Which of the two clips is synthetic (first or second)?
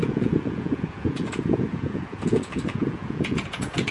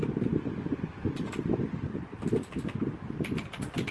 first